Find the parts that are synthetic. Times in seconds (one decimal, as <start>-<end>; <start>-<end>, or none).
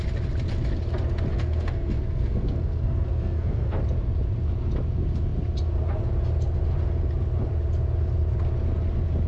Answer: 1.3-3.8